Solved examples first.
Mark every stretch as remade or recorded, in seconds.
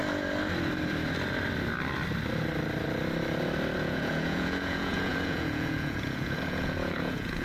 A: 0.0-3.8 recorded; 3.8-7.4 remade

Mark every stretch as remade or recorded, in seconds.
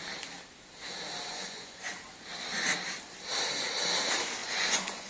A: 0.0-1.3 recorded; 1.3-1.9 remade; 1.9-4.4 recorded; 4.4-5.1 remade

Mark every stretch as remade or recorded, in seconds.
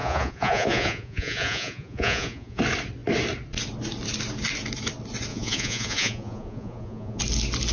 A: 0.0-2.6 remade; 2.6-5.3 recorded; 5.3-7.2 remade; 7.2-7.7 recorded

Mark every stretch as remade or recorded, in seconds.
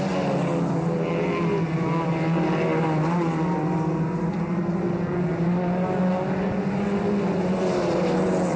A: 0.0-8.6 recorded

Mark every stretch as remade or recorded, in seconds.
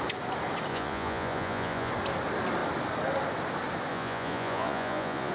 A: 0.0-0.7 recorded; 0.7-1.9 remade; 1.9-3.9 recorded; 3.9-5.3 remade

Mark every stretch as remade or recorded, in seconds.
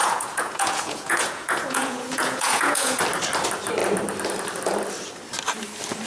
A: 0.0-3.0 remade; 3.0-6.1 recorded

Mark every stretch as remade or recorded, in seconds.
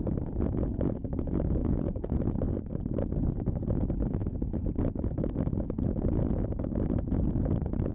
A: 0.0-1.6 recorded; 1.6-2.2 remade; 2.2-7.9 recorded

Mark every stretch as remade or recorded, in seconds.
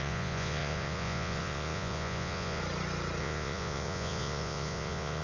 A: 0.0-2.6 remade; 2.6-3.2 recorded; 3.2-5.2 remade